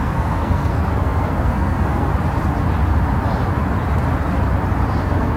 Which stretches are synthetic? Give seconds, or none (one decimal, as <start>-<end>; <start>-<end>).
0.0-2.1; 5.0-5.4